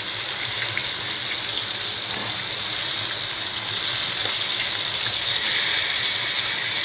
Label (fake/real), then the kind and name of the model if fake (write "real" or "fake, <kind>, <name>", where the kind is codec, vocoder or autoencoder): real